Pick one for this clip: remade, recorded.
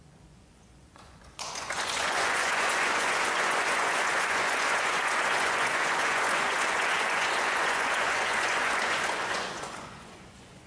remade